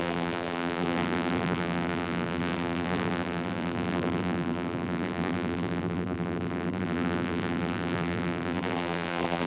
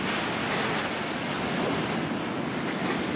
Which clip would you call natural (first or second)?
second